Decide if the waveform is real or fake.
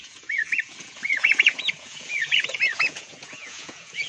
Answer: fake